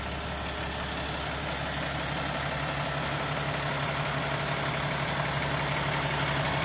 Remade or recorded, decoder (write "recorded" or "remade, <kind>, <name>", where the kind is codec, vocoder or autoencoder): recorded